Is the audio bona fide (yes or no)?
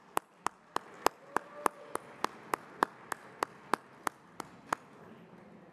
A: yes